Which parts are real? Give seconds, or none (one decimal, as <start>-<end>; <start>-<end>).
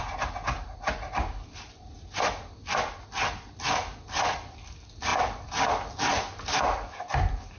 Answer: 0.0-7.6